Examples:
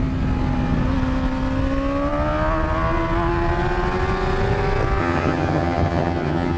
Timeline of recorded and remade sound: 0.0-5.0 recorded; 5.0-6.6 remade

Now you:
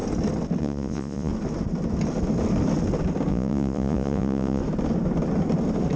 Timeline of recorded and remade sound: 0.0-0.6 recorded; 0.6-1.3 remade; 1.3-3.3 recorded; 3.3-4.6 remade; 4.6-6.0 recorded

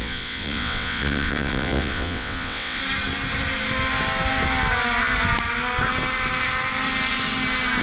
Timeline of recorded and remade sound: 0.0-2.8 remade; 2.8-7.8 recorded